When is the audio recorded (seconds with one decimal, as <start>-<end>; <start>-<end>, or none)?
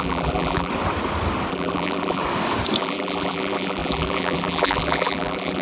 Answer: 0.7-1.5; 2.2-2.8